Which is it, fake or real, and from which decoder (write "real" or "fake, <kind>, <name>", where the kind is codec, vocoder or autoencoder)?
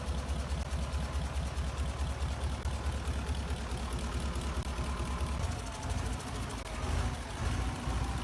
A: real